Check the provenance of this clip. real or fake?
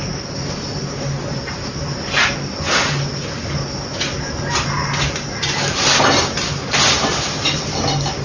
real